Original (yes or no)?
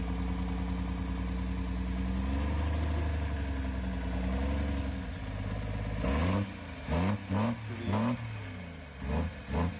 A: yes